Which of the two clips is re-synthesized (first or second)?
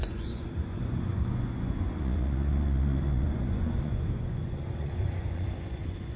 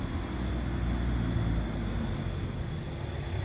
first